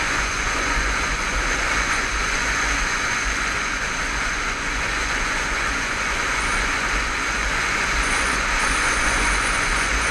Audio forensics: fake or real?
fake